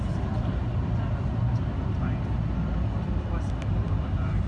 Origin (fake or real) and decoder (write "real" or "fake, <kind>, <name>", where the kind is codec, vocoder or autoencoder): real